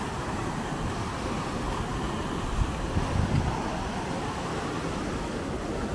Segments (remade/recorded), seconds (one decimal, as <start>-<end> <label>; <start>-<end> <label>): 0.0-5.9 recorded